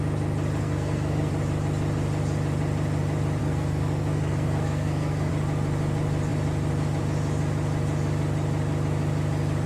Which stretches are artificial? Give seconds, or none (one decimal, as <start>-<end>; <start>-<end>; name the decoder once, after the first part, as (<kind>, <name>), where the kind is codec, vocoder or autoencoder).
0.6-1.3 (codec, SNAC); 3.4-5.3